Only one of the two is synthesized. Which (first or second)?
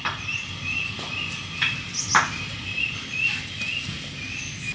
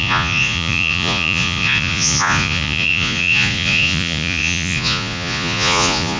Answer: second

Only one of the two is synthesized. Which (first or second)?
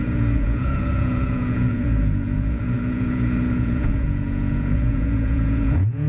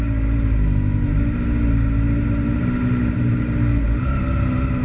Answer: first